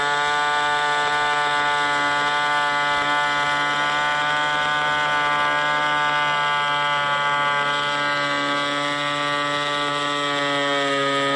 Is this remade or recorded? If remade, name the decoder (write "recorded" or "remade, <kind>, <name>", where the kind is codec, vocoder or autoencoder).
recorded